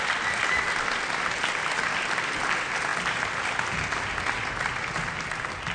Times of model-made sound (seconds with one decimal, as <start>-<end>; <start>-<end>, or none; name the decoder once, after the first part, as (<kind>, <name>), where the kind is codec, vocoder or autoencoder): none